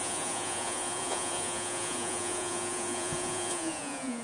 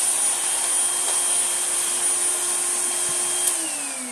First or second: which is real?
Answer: second